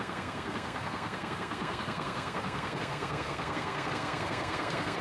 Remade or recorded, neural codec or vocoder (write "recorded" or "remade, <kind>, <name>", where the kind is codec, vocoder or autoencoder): remade, codec, SNAC